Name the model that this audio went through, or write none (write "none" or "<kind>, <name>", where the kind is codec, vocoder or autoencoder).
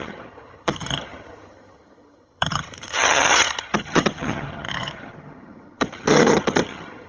vocoder, HiFi-GAN